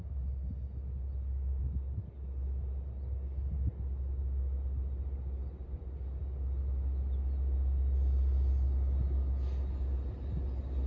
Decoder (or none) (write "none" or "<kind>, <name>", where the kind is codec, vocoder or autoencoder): none